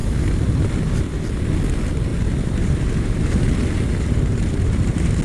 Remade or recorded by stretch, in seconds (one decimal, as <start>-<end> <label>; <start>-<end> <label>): 0.0-2.1 recorded; 2.1-5.2 remade